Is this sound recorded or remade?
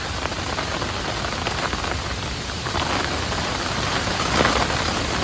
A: recorded